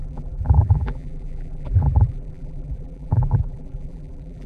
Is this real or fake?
fake